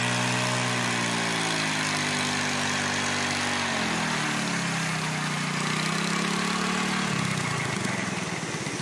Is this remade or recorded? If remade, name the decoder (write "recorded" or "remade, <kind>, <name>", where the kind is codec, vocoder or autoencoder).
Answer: recorded